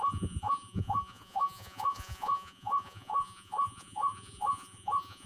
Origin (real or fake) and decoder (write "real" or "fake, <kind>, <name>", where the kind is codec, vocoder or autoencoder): fake, vocoder, Vocos